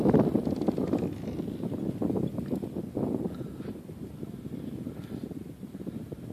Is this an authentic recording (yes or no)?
no